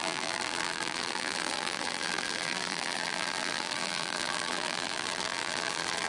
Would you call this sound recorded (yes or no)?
no